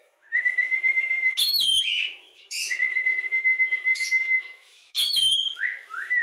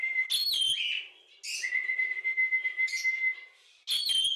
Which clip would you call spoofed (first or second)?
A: first